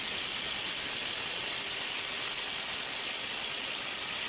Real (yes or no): yes